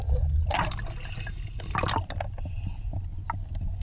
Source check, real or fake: real